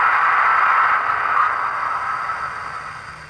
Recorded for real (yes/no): yes